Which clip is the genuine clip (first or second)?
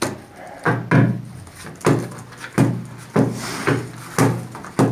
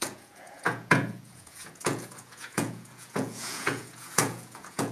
first